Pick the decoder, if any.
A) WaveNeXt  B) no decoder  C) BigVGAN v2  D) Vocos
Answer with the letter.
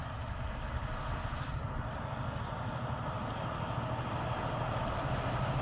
B